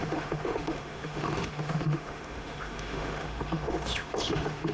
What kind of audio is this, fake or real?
fake